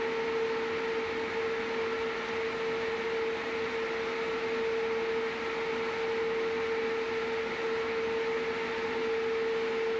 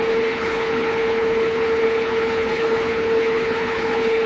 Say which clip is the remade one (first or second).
second